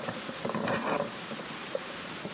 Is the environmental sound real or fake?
real